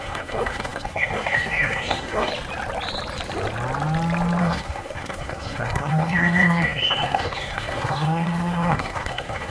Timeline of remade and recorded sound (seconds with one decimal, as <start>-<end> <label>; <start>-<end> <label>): 0.0-2.3 remade; 2.3-4.4 recorded; 4.4-9.5 remade